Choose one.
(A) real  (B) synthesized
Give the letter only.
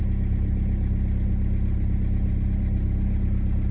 A